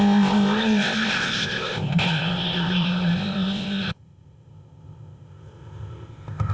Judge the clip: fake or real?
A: fake